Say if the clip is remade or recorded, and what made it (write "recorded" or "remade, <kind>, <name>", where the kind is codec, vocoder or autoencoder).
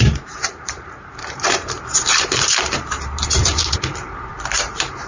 remade, vocoder, BigVGAN v2